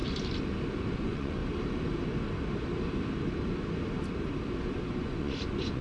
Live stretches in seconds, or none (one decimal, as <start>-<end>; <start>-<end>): 0.0-0.9; 1.4-4.9